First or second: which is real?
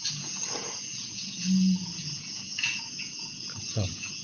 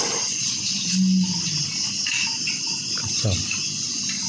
second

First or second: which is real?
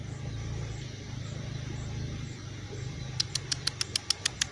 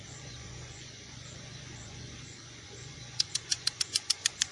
first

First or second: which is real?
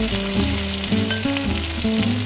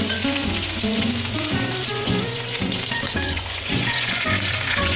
first